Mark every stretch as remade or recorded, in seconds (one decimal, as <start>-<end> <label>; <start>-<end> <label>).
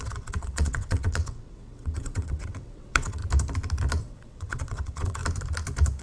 0.0-3.2 remade; 3.2-4.0 recorded; 4.0-5.2 remade; 5.2-6.0 recorded